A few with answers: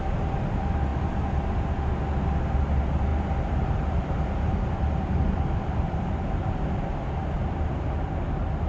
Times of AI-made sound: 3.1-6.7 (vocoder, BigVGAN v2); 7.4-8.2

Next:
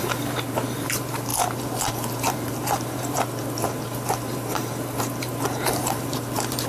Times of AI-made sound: 0.0-6.7 (vocoder, BigVGAN v2)

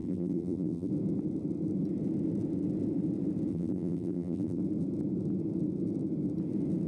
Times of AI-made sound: 0.0-0.9 (vocoder, BigVGAN v2); 3.5-4.6

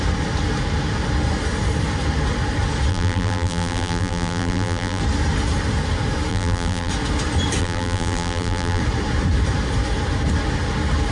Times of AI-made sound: 2.9-5.0 (vocoder, BigVGAN v2); 6.3-6.9; 7.6-8.8

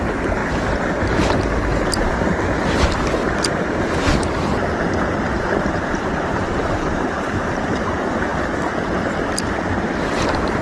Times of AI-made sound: 0.0-0.4 (vocoder, BigVGAN v2); 2.9-4.1; 5.6-8.3

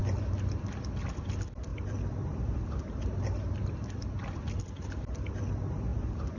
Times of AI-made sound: 1.7-5.5 (vocoder, BigVGAN v2); 5.9-6.4

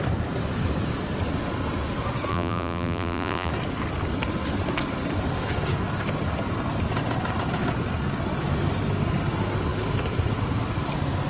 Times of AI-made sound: 2.3-3.5 (vocoder, BigVGAN v2)

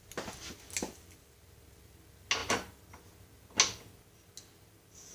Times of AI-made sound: none